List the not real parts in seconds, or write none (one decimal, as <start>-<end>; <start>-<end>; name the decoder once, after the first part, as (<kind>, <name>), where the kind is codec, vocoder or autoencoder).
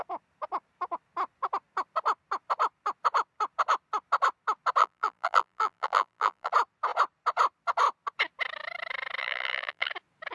4.8-6.5 (vocoder, BigVGAN v2); 9.2-9.9